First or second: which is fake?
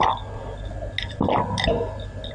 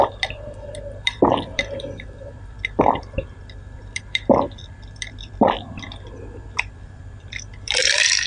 second